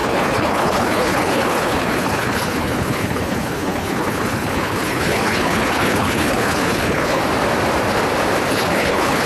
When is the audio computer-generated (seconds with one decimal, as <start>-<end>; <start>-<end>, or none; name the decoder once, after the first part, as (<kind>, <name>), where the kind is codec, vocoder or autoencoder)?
0.0-7.2 (codec, HILCodec); 8.5-9.3